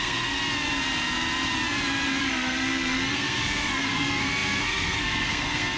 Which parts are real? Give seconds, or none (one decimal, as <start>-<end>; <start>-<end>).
0.4-2.2